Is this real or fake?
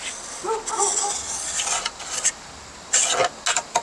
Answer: real